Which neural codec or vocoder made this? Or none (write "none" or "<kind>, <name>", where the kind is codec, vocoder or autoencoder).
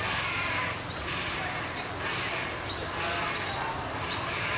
none